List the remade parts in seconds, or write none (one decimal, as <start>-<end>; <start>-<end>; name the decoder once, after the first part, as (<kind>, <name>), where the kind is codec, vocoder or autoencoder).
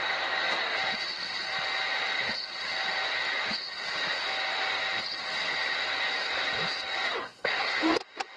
7.2-7.8 (codec, SNAC)